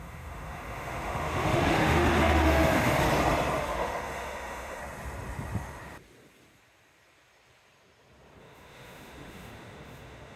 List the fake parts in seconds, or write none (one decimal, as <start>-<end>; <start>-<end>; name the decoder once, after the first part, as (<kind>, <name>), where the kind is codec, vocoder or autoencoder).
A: 0.0-3.0 (autoencoder, DAC-VAE); 3.6-4.8; 8.4-10.4